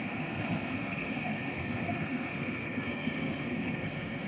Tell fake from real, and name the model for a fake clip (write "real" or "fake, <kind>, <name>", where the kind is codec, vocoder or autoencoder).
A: fake, codec, SNAC